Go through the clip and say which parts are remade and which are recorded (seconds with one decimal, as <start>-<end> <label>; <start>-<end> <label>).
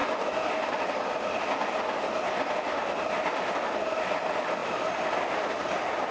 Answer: 0.0-6.1 recorded